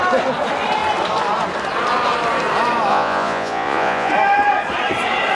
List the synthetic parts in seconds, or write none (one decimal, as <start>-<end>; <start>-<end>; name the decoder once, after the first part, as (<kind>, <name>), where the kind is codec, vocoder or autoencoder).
2.9-4.1 (vocoder, Vocos)